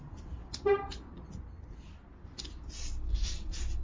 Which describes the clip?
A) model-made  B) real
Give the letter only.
B